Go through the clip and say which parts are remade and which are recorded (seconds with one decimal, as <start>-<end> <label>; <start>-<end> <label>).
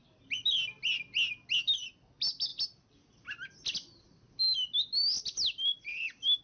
0.0-6.4 recorded